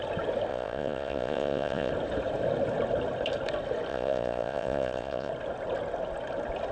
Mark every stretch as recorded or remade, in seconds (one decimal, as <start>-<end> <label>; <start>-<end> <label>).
0.0-0.5 recorded; 0.5-1.9 remade; 1.9-3.9 recorded; 3.9-5.3 remade; 5.3-6.7 recorded